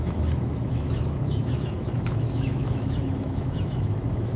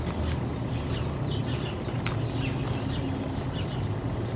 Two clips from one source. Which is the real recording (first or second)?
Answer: second